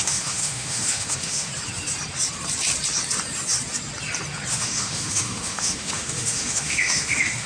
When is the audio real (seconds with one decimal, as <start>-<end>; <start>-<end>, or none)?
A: 1.5-4.5